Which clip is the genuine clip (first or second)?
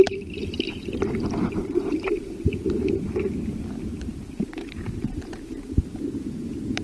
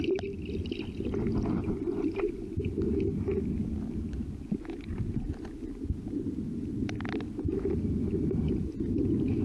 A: second